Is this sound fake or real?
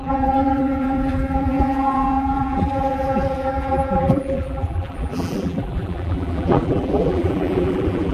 fake